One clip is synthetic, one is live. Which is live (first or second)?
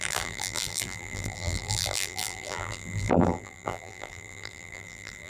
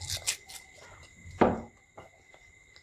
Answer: second